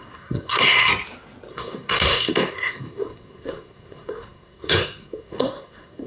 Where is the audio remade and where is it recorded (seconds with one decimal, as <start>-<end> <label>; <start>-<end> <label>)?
0.0-0.9 remade; 0.9-1.5 recorded; 1.5-6.1 remade